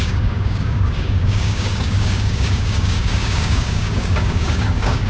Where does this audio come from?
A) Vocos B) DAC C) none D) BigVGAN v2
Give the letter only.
B